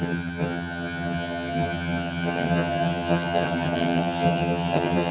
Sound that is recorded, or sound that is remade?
remade